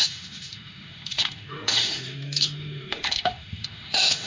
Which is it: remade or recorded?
remade